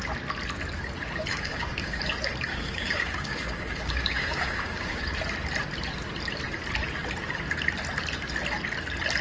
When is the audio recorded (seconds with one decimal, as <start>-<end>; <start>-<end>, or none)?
0.0-1.3; 2.0-2.5; 5.0-9.2